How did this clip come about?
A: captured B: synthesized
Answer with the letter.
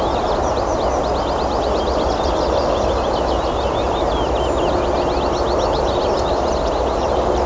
A